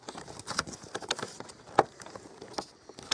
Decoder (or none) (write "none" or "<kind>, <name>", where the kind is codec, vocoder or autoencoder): none